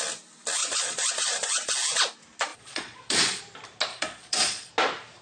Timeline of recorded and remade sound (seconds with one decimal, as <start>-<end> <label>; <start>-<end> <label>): 0.0-0.6 recorded; 0.6-1.7 remade; 1.7-2.5 recorded; 2.5-3.4 remade; 3.4-3.9 recorded; 3.9-4.7 remade; 4.7-5.2 recorded

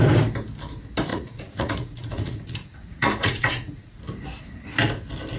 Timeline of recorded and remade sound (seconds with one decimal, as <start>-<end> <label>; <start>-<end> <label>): 0.0-1.1 recorded; 1.1-4.0 remade; 4.0-5.4 recorded

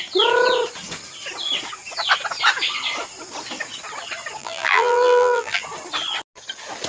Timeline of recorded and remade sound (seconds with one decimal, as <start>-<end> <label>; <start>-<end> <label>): 0.0-4.4 recorded; 4.4-5.6 remade; 5.6-6.9 recorded

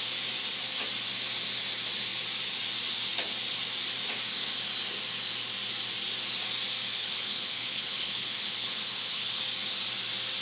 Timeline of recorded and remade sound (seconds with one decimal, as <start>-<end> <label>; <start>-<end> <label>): 0.0-6.9 recorded; 6.9-9.4 remade; 9.4-10.4 recorded

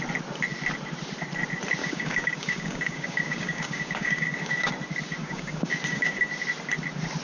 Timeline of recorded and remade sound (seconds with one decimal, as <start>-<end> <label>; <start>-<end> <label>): 0.0-1.8 recorded; 1.8-4.7 remade; 4.7-5.2 recorded; 5.2-6.3 remade; 6.3-7.2 recorded

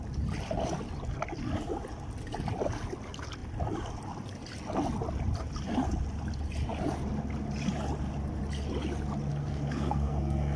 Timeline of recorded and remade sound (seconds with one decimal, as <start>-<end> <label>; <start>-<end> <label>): 0.0-9.3 recorded; 9.3-10.6 remade